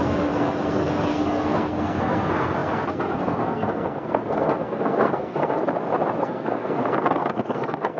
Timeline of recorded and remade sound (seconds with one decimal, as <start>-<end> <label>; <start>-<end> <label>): 0.0-5.6 remade; 5.6-6.2 recorded; 6.2-8.0 remade